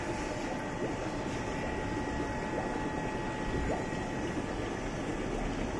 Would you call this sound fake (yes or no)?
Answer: no